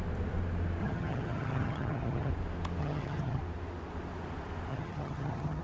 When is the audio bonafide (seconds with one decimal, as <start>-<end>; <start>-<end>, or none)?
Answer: 0.0-0.8; 2.3-2.8; 3.4-4.7